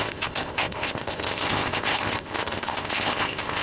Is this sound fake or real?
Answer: fake